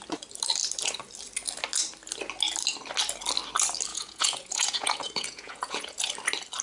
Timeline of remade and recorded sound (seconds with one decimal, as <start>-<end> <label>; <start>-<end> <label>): 0.0-3.9 recorded; 3.9-6.1 remade; 6.1-6.6 recorded